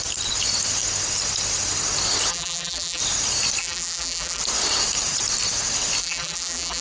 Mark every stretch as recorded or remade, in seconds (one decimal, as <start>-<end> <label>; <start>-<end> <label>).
0.0-2.3 recorded; 2.3-3.0 remade; 3.0-3.6 recorded; 3.6-4.4 remade; 4.4-6.0 recorded; 6.0-6.8 remade

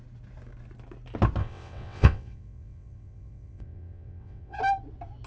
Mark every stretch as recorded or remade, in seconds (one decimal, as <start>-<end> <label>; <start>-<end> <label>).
0.0-1.4 recorded; 1.4-4.6 remade; 4.6-5.3 recorded